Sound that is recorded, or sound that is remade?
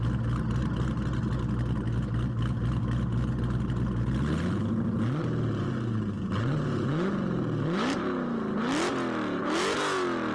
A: recorded